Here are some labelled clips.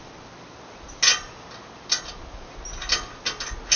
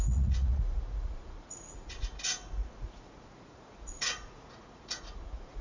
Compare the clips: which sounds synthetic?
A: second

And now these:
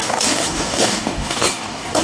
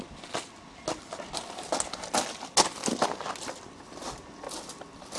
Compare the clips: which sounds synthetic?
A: first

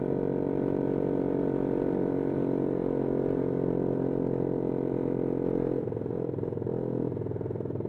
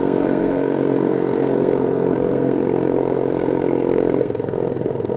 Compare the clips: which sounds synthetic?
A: second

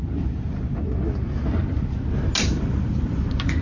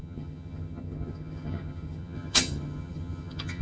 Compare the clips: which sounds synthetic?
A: second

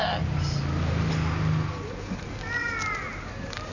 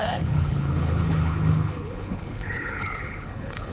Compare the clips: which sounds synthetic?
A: second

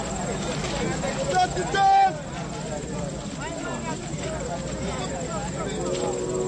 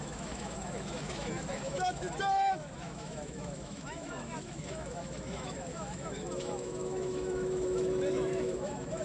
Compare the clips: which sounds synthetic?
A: second